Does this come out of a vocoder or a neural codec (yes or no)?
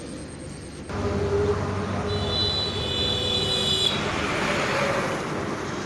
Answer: no